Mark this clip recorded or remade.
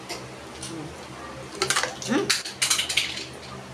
recorded